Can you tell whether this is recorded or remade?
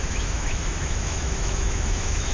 remade